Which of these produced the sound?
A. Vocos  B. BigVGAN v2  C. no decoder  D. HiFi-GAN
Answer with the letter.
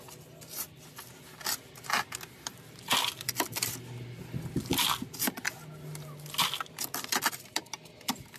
C